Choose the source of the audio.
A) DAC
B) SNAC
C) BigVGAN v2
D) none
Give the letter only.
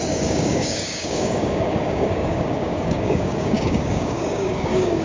A